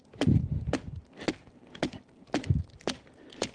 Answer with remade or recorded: recorded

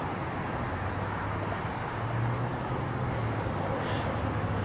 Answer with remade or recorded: recorded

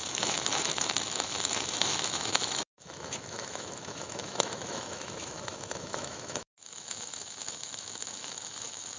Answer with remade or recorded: remade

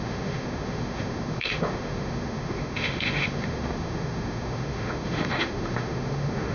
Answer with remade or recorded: remade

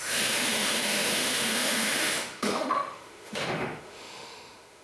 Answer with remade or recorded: remade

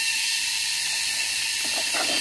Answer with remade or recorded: recorded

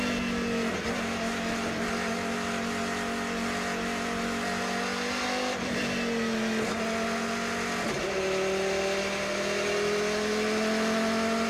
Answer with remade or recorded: recorded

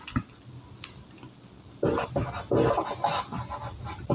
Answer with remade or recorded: recorded